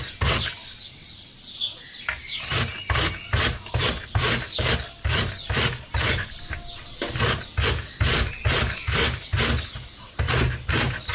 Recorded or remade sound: recorded